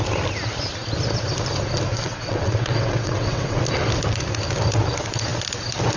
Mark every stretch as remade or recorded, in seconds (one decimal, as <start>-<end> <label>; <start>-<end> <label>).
0.0-1.9 recorded; 1.9-3.6 remade; 3.6-6.0 recorded